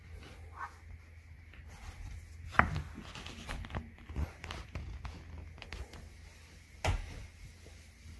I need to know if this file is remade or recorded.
recorded